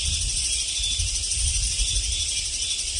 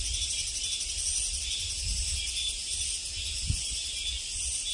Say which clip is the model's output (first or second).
first